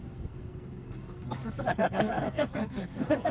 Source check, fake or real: fake